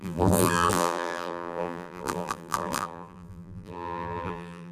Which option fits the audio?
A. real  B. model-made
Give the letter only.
B